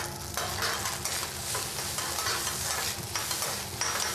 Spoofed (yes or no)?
no